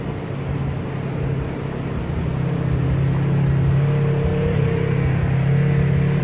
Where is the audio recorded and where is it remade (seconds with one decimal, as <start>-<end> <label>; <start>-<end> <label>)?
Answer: 0.0-6.2 recorded